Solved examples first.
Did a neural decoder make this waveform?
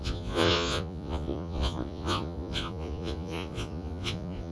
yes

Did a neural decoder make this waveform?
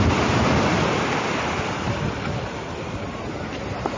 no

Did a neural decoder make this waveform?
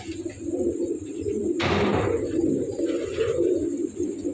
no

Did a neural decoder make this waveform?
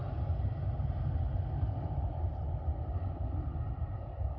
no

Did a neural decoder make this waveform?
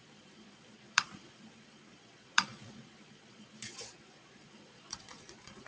yes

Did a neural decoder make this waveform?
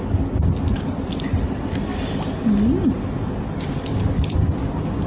no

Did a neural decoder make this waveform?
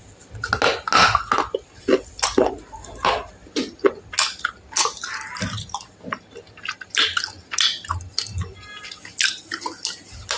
no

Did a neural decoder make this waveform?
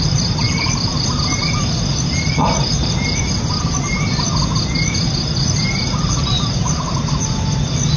no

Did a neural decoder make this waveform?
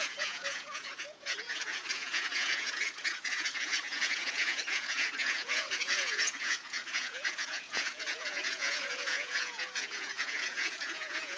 yes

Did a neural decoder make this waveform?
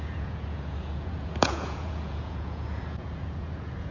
yes